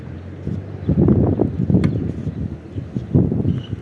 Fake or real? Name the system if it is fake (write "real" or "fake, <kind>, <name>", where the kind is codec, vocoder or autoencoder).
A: real